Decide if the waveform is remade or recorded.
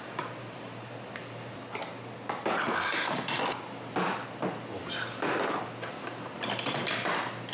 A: recorded